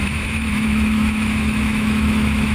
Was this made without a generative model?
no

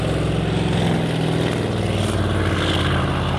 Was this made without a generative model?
yes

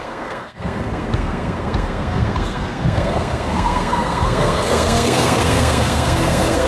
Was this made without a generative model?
no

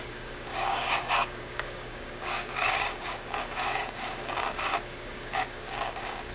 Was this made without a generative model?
no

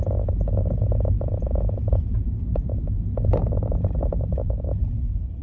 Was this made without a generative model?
yes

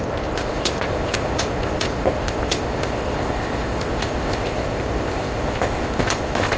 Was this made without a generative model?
no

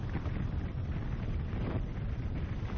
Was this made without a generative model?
no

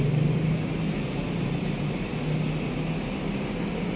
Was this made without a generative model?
yes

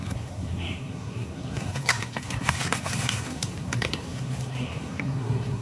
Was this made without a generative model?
no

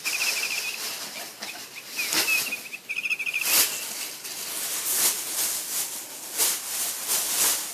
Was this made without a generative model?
yes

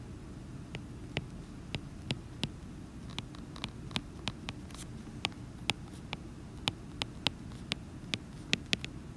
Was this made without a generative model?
yes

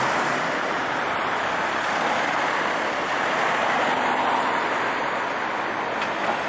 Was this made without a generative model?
yes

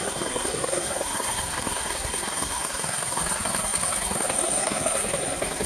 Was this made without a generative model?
no